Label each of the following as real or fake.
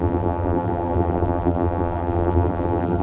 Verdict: fake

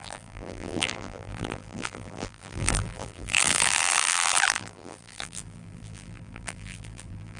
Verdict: fake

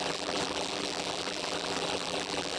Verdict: fake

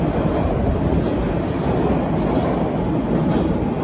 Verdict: real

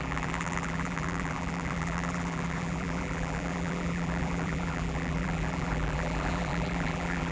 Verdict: fake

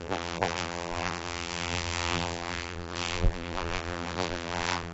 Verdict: fake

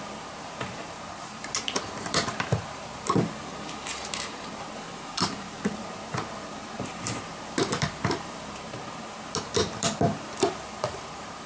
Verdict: fake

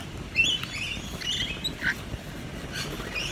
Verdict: real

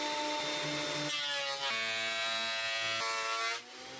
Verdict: real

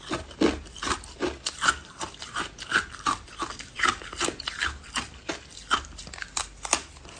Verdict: fake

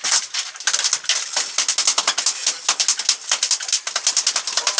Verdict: real